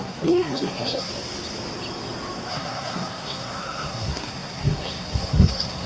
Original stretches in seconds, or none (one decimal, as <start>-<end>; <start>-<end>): 1.1-2.5